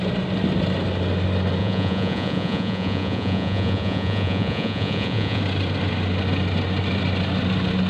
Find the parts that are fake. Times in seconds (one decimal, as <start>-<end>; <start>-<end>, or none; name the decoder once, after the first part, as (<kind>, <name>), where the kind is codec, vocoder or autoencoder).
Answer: 1.6-5.4 (vocoder, Vocos)